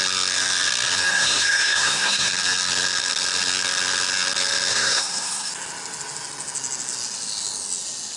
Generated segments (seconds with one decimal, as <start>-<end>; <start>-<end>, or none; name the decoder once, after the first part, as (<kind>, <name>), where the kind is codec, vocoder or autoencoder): 1.1-2.3 (codec, SNAC); 4.7-5.5